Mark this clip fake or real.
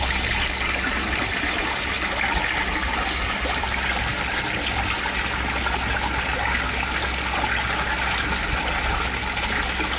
real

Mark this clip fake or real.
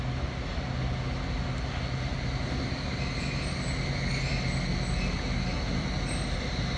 real